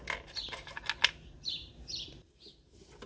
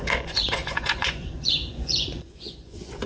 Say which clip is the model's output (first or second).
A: second